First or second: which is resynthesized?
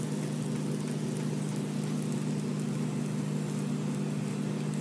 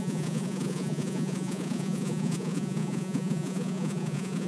second